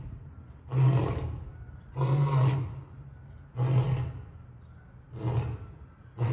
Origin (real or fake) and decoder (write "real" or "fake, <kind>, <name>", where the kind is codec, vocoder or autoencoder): real